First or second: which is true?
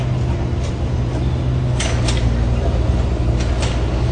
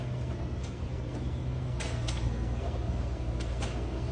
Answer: first